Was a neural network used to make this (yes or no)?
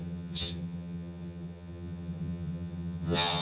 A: yes